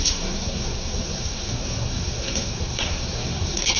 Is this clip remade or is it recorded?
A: remade